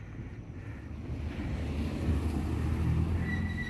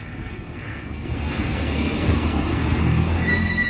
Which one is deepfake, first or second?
second